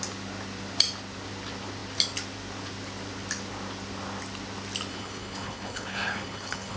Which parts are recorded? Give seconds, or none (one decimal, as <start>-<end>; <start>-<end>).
0.0-4.9